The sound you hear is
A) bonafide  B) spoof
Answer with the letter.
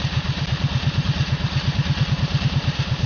B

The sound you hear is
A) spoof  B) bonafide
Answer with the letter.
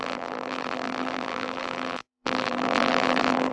A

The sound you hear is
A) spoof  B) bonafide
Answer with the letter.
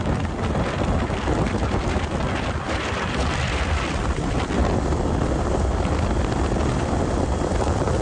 B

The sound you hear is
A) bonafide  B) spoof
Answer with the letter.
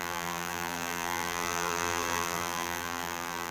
B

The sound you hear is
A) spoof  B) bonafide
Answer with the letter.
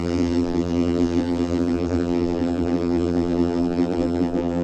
A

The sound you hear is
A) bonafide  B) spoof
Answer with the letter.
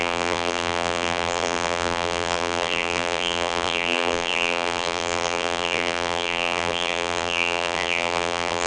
B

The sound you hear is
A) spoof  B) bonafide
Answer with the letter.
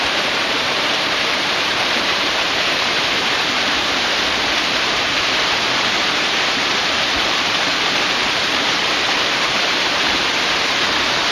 A